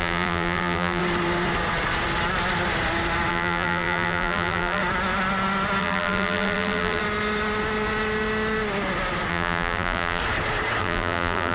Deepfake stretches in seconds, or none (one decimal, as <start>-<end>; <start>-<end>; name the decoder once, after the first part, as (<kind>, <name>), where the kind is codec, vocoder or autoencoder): 0.0-1.0 (vocoder, BigVGAN v2); 3.3-4.8; 5.8-7.0; 9.3-10.2; 10.8-11.5